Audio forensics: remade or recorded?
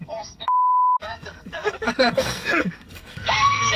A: remade